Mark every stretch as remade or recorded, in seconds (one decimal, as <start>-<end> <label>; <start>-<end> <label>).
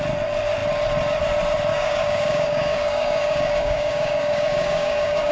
0.0-1.7 recorded; 1.7-5.3 remade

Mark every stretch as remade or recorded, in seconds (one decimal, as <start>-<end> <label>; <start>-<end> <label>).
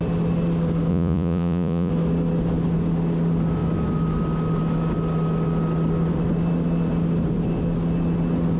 0.0-0.9 recorded; 0.9-1.9 remade; 1.9-8.6 recorded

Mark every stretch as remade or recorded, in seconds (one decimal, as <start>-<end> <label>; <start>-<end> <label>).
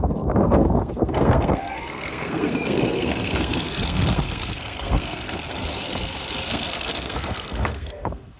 0.0-5.6 remade; 5.6-6.5 recorded; 6.5-8.4 remade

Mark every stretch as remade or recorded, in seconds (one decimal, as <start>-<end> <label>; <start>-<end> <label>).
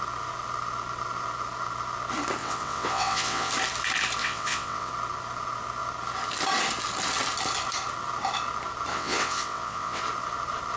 0.0-2.4 recorded; 2.4-3.5 remade; 3.5-4.2 recorded; 4.2-4.9 remade; 4.9-8.9 recorded; 8.9-10.0 remade; 10.0-10.8 recorded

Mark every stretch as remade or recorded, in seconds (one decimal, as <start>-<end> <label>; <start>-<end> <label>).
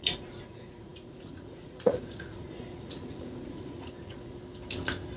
0.0-4.4 remade; 4.4-5.2 recorded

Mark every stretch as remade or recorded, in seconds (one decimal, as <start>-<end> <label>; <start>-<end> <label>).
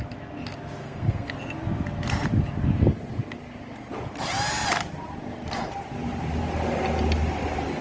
0.0-0.8 recorded; 0.8-1.3 remade; 1.3-7.8 recorded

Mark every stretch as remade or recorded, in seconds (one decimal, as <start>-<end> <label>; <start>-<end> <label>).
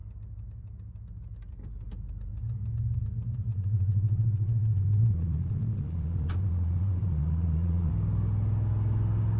0.0-3.5 recorded; 3.5-7.9 remade; 7.9-9.4 recorded